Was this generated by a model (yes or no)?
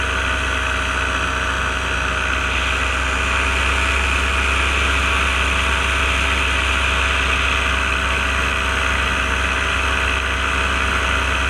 no